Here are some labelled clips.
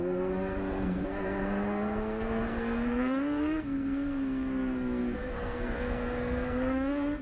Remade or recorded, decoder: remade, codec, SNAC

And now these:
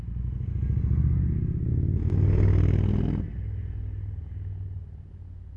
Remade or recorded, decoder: recorded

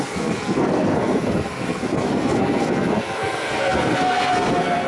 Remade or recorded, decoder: remade, codec, SNAC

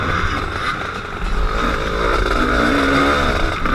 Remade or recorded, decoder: recorded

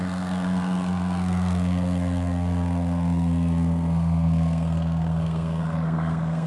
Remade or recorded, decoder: remade, codec, SNAC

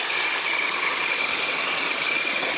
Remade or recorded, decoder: recorded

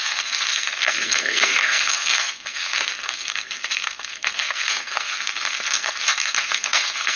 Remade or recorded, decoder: remade, codec, SNAC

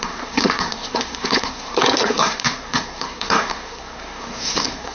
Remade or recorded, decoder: remade, codec, SNAC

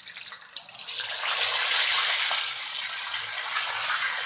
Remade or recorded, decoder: recorded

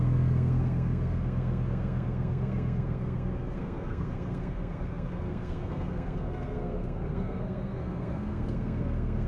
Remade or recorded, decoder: remade, codec, SNAC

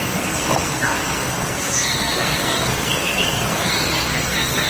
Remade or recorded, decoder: remade, codec, SNAC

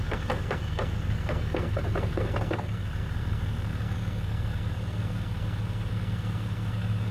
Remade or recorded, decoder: remade, codec, SNAC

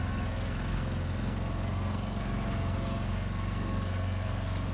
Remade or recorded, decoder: remade, codec, SNAC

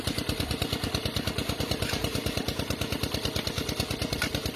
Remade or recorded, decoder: recorded